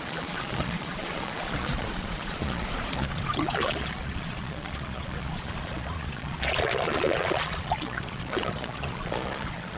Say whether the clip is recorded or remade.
remade